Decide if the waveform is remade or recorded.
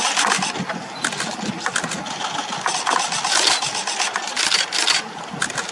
recorded